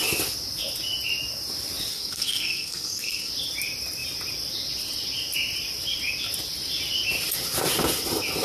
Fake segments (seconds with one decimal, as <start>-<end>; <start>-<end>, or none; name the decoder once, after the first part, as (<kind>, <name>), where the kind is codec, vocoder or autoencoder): 1.9-3.3 (codec, SNAC)